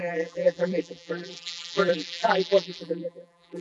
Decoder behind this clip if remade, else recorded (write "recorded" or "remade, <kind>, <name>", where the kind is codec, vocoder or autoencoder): remade, vocoder, BigVGAN v2